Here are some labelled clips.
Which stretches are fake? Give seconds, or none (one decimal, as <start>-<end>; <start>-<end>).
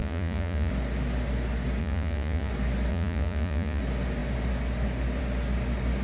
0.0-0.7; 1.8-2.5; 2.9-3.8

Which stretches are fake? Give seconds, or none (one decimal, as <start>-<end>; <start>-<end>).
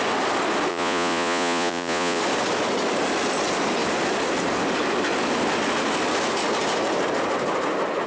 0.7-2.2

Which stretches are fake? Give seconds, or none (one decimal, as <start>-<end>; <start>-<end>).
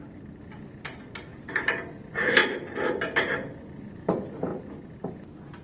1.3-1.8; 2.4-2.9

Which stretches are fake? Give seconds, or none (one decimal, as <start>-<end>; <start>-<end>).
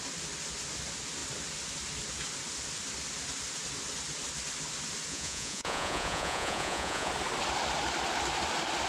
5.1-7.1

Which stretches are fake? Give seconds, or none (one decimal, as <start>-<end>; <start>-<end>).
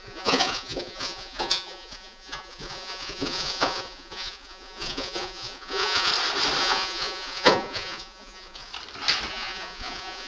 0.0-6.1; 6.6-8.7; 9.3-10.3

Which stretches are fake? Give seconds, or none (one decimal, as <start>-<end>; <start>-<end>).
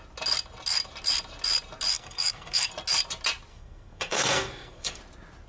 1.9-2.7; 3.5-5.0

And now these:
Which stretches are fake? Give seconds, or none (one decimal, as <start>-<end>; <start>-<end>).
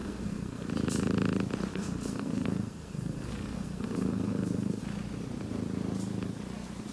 0.0-0.7; 1.7-4.8